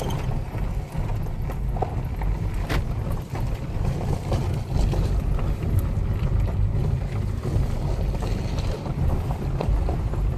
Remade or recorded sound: recorded